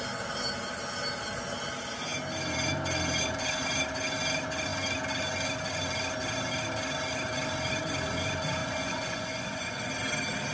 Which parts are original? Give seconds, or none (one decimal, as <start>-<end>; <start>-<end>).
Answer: 0.0-8.6; 9.9-10.5